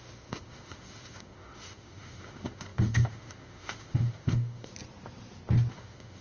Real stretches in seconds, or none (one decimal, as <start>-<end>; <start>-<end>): 4.7-5.7